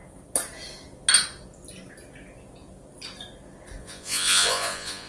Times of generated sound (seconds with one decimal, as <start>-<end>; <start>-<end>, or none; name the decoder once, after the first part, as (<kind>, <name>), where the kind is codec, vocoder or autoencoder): 3.8-5.1 (vocoder, Vocos)